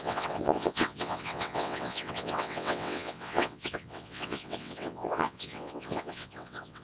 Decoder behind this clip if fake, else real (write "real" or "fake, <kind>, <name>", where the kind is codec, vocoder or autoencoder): fake, vocoder, WaveNeXt